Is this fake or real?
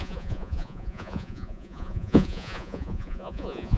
fake